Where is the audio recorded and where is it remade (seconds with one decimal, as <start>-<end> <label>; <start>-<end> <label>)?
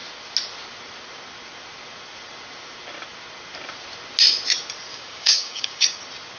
0.0-4.9 recorded; 4.9-6.0 remade; 6.0-6.4 recorded